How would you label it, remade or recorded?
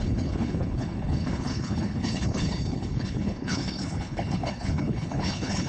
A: remade